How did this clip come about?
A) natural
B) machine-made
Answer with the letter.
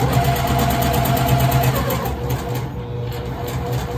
A